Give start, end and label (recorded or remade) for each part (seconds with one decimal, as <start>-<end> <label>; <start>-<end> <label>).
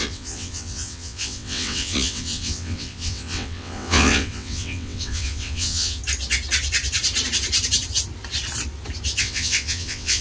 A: 0.0-6.0 remade; 6.0-9.2 recorded; 9.2-10.2 remade